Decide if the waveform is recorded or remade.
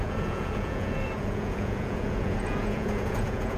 remade